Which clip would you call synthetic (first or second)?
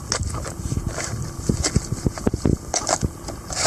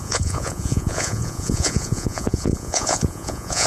second